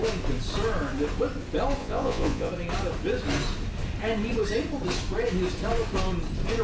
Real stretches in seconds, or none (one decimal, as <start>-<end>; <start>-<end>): 0.0-1.8; 2.5-6.6